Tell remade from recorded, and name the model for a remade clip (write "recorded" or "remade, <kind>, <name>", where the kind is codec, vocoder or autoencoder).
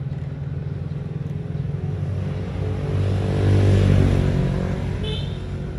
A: recorded